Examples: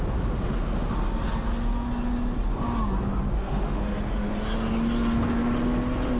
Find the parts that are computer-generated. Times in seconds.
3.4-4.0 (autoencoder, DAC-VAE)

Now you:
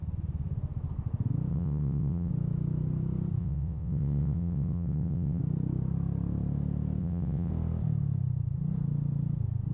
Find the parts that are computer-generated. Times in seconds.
1.5-2.3 (vocoder, WaveNeXt); 3.4-5.4; 7.0-7.5

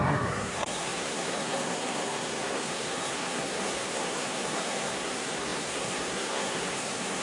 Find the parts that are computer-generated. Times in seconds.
0.0-7.2 (codec, SNAC)

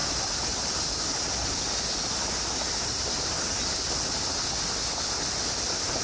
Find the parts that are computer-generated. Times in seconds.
none